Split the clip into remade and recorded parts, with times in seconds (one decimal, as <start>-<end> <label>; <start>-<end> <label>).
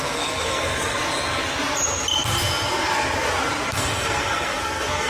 0.0-0.6 remade; 0.6-3.7 recorded; 3.7-5.1 remade